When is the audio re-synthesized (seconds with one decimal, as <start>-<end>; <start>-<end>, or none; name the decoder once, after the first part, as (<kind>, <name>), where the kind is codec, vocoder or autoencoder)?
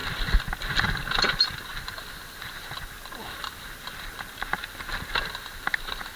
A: none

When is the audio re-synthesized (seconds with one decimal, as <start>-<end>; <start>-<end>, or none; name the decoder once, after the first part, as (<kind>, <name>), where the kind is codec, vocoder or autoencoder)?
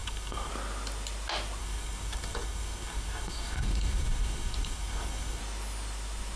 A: 0.0-0.5 (codec, DAC); 1.6-5.4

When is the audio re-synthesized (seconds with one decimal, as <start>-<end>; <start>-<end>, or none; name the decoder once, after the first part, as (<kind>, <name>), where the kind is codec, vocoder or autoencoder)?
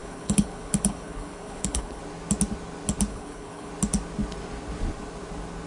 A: 0.0-2.0 (codec, HILCodec); 3.1-3.7